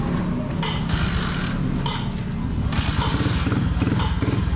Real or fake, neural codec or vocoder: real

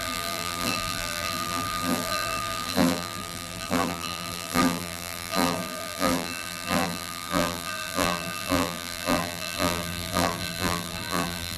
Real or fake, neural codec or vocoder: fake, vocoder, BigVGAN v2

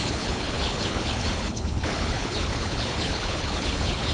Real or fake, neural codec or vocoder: fake, codec, HILCodec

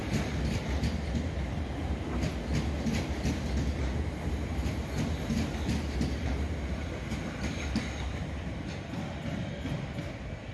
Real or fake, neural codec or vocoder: real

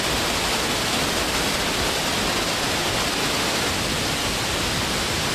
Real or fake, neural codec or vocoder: real